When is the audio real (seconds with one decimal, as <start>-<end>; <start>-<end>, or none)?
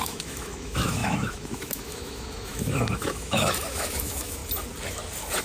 4.4-5.4